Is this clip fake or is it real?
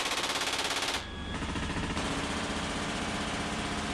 real